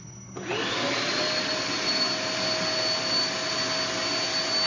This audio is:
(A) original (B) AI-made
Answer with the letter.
A